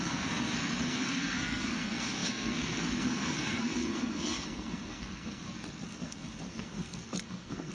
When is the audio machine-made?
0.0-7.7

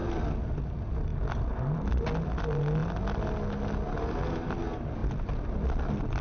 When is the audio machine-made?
none

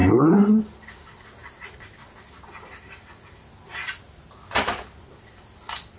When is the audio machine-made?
0.0-0.6

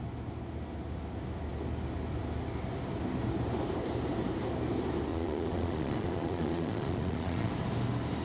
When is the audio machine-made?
5.1-7.5

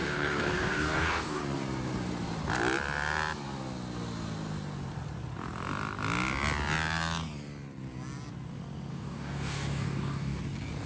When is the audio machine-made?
0.0-1.4; 8.9-10.4

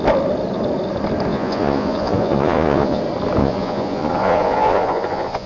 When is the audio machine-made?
1.3-3.0; 3.4-5.5

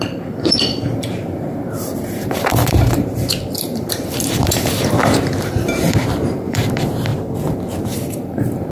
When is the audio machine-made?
0.0-7.1; 7.8-8.7